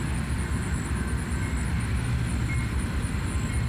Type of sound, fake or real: real